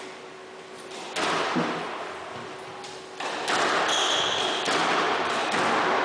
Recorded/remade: recorded